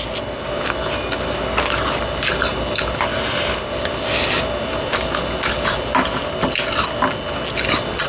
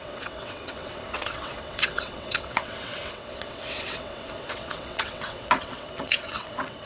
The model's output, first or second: second